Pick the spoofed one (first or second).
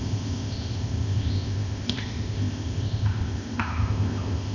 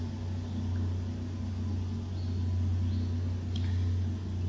first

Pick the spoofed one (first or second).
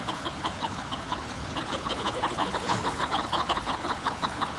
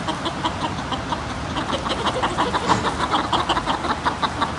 first